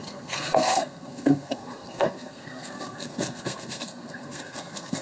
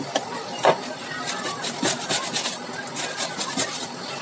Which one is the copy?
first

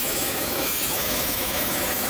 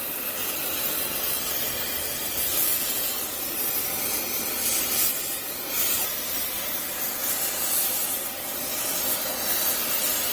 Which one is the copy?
first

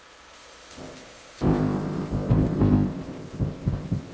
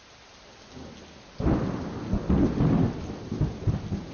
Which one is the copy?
first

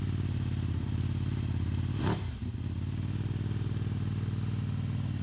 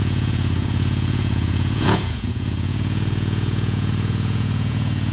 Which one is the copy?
second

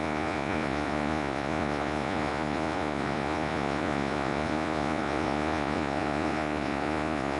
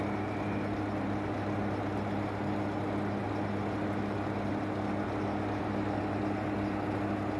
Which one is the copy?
first